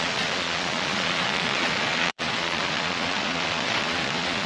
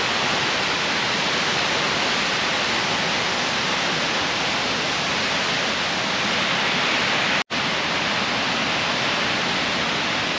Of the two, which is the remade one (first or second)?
first